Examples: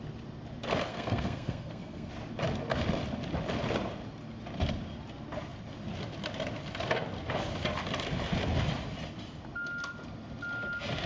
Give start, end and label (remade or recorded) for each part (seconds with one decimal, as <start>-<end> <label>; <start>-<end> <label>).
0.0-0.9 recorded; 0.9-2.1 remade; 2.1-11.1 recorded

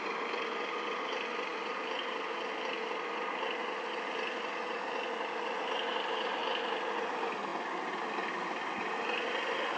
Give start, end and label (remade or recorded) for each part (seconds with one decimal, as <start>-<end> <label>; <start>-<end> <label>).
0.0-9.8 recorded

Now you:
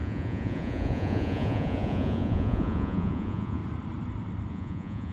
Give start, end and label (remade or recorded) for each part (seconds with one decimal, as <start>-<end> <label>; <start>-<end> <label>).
0.0-3.6 remade; 3.6-4.5 recorded; 4.5-5.1 remade